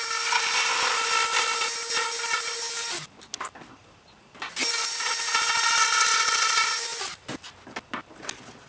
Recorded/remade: recorded